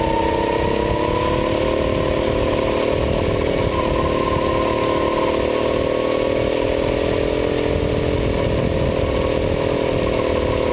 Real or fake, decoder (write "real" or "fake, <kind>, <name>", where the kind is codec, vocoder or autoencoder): real